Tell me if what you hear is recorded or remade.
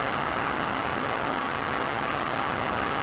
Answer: remade